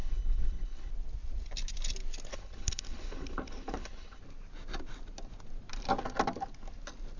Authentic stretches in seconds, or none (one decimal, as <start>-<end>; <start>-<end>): 0.9-2.3; 4.2-7.2